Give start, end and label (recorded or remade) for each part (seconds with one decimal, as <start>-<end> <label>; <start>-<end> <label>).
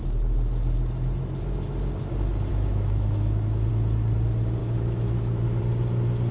0.0-2.5 recorded; 2.5-3.7 remade; 3.7-4.6 recorded; 4.6-5.6 remade; 5.6-6.3 recorded